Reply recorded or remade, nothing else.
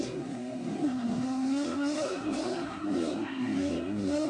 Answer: remade